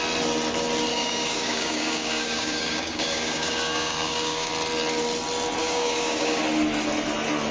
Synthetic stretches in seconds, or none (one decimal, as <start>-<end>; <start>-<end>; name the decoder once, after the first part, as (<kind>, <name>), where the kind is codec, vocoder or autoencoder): 0.9-4.5 (codec, DAC); 5.6-6.4